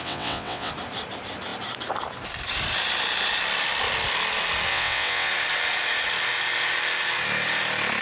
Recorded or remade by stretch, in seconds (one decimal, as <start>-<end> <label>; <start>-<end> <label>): 0.0-0.7 remade; 0.7-4.7 recorded; 4.7-5.3 remade; 5.3-8.0 recorded